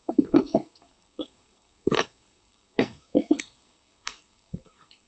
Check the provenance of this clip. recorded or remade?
remade